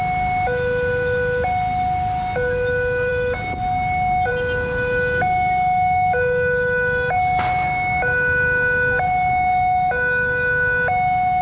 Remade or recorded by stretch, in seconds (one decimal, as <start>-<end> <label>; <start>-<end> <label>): 0.0-11.4 recorded